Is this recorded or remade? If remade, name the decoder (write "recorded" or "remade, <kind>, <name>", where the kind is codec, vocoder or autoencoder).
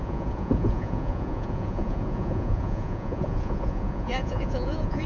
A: remade, vocoder, Vocos